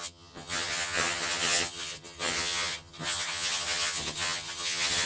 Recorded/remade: remade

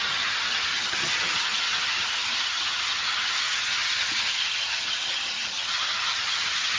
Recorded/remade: remade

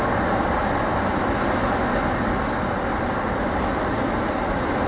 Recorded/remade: recorded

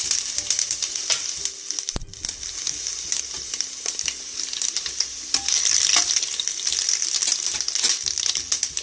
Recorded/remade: recorded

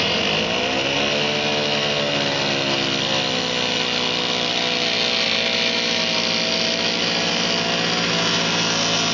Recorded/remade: recorded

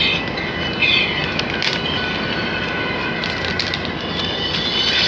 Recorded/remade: recorded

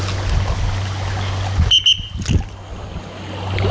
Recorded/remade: recorded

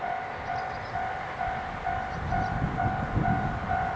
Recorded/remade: recorded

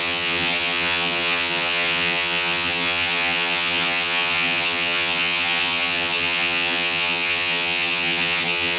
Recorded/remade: remade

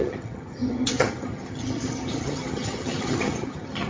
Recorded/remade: remade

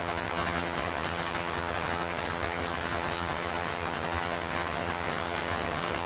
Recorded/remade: remade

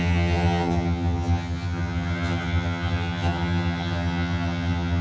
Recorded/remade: remade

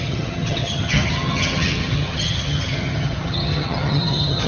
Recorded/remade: remade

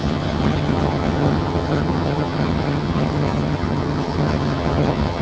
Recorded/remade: remade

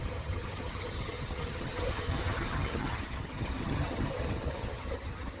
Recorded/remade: remade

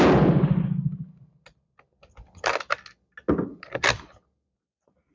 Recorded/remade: recorded